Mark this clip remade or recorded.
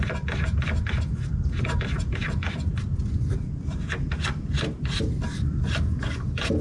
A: recorded